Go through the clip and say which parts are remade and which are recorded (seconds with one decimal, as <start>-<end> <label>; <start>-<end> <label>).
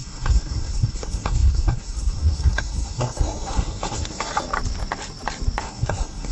0.0-4.3 remade; 4.3-5.6 recorded; 5.6-6.3 remade